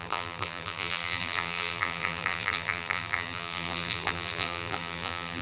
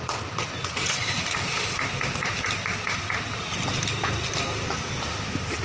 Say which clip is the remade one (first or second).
first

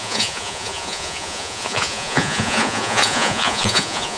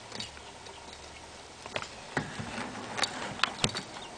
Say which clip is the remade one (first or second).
first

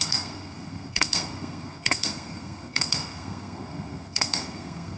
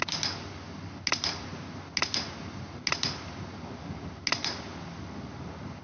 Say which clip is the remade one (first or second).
first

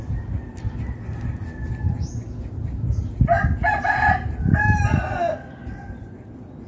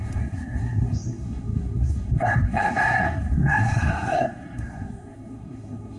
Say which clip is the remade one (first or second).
second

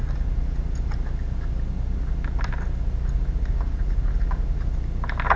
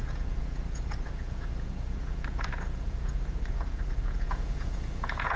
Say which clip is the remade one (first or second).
second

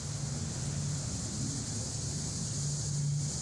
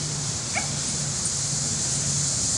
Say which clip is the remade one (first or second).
second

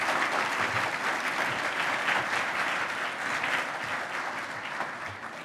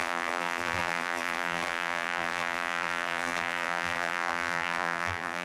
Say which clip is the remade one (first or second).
second